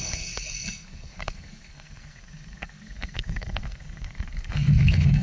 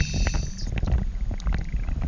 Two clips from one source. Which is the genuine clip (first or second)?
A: second